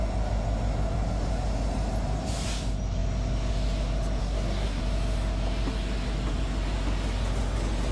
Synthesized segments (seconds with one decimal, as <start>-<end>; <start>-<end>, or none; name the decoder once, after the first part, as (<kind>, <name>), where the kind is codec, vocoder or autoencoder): 4.2-4.8 (codec, SNAC)